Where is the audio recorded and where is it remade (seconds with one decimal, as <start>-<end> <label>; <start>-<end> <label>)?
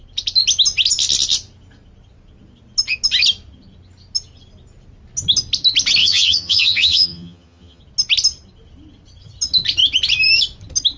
0.0-6.0 recorded; 6.0-7.8 remade; 7.8-11.0 recorded